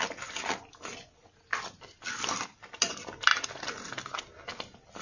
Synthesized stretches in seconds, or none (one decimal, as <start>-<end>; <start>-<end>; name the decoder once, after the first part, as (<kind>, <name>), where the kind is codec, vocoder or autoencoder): none

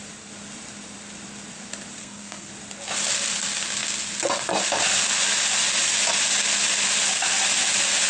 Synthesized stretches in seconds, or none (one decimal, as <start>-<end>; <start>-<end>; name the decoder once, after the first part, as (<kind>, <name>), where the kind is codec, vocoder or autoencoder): 2.0-2.5 (codec, SNAC)

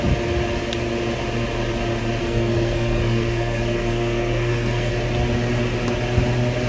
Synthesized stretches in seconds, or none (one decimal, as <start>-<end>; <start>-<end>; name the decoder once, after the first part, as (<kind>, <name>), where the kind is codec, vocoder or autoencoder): 2.2-4.9 (codec, SNAC)

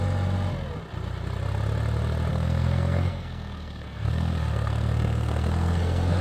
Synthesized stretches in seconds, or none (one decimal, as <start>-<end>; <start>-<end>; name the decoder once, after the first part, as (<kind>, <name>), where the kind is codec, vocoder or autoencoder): 2.3-6.2 (codec, SNAC)

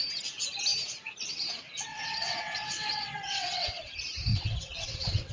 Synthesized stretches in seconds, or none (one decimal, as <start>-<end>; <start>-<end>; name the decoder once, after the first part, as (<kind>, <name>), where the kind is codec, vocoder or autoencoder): 1.9-3.9 (vocoder, WaveNeXt); 4.3-5.3

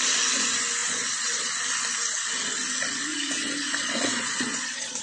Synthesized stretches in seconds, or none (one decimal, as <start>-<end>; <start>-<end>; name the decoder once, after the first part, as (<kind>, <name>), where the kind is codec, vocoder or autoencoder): 0.8-1.5 (vocoder, Vocos); 3.1-5.0

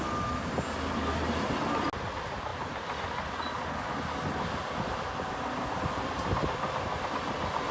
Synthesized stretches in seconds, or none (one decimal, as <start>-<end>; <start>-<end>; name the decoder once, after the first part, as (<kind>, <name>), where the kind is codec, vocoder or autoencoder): none

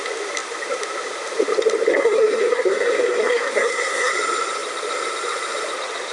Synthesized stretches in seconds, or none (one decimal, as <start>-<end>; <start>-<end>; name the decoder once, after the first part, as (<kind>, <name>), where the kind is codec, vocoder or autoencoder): 1.9-4.1 (codec, SNAC)